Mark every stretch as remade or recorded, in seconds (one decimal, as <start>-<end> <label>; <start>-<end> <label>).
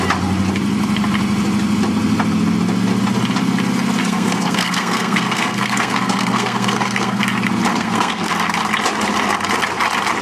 0.0-4.0 recorded; 4.0-7.2 remade; 7.2-7.7 recorded; 7.7-8.3 remade; 8.3-10.2 recorded